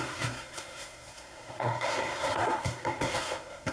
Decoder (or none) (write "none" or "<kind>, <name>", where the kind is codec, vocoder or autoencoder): codec, SNAC